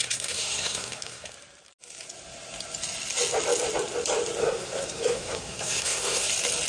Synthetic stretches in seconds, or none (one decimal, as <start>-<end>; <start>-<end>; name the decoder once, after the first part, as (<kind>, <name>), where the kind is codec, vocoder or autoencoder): 0.0-1.3 (codec, SNAC); 4.4-6.3